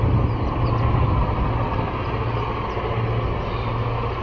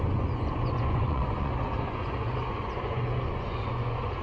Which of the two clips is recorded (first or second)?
first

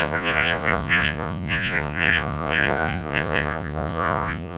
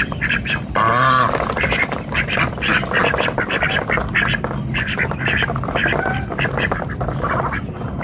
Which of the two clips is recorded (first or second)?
second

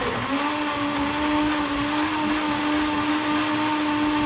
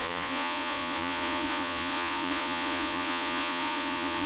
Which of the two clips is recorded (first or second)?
first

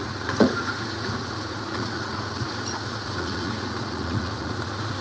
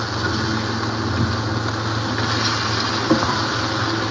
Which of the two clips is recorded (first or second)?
second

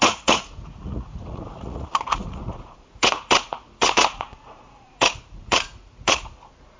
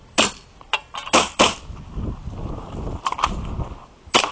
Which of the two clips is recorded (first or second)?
second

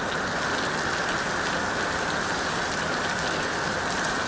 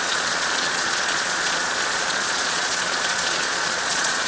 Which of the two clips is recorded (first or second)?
first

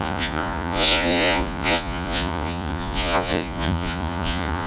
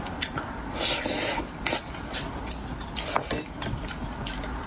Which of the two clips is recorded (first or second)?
second